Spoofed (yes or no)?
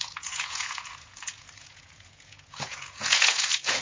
yes